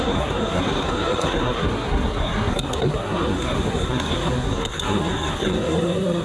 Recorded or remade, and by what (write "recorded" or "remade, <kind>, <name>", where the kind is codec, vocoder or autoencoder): remade, codec, SNAC